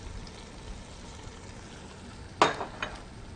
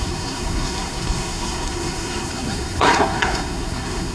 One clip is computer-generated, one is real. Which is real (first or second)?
first